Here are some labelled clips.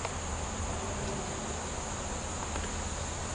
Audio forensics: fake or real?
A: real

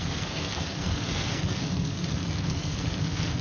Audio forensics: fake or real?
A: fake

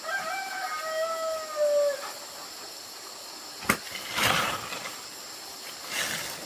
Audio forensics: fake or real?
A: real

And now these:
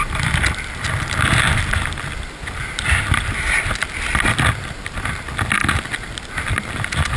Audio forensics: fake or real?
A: real